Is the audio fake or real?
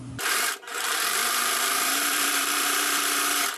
fake